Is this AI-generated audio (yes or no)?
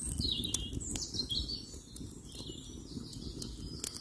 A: no